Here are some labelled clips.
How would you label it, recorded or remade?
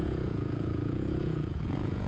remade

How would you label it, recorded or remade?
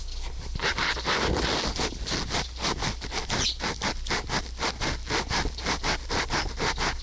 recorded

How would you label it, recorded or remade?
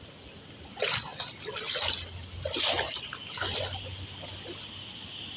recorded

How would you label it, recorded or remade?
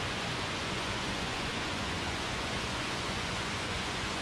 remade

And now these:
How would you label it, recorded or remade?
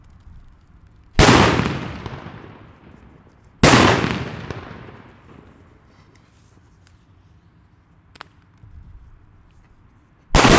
recorded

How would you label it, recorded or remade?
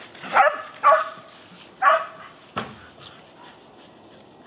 recorded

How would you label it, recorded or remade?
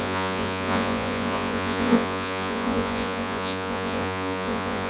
remade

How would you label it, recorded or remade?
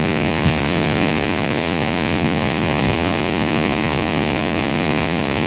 remade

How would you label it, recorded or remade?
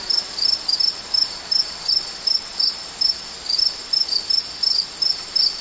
recorded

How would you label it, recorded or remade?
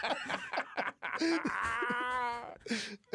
recorded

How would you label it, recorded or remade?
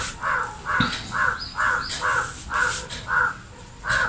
recorded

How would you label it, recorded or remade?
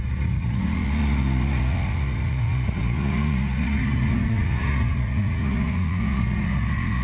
remade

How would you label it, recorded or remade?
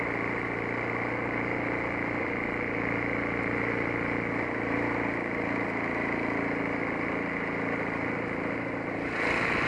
recorded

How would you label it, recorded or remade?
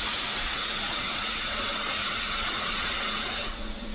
remade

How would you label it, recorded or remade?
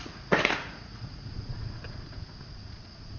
remade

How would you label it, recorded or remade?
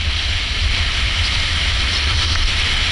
recorded